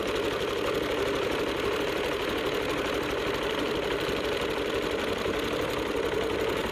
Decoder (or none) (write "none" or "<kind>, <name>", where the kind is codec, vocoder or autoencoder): none